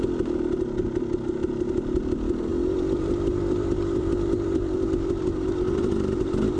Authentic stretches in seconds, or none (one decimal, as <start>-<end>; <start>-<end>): 0.0-2.5